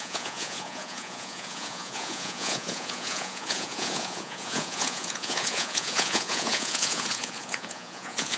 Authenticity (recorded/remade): remade